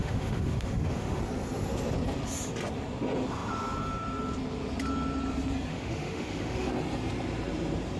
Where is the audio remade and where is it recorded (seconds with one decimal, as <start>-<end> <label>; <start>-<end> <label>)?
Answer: 0.0-1.2 remade; 1.2-5.7 recorded; 5.7-6.7 remade; 6.7-8.0 recorded